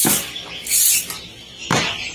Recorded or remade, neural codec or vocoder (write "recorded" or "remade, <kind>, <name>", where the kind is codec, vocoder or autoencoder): recorded